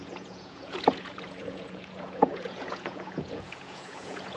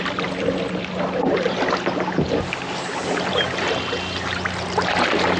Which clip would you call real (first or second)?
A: second